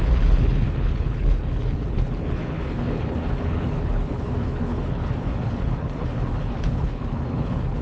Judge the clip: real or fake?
fake